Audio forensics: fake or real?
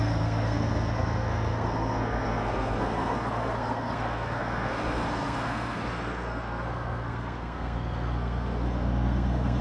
fake